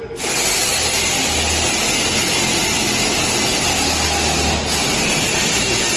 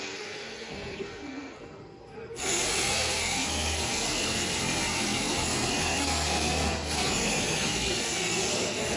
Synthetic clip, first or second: second